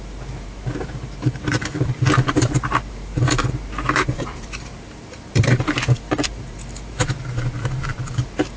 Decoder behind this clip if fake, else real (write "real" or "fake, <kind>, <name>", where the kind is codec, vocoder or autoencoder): fake, vocoder, BigVGAN v2